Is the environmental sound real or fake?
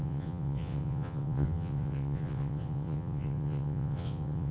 fake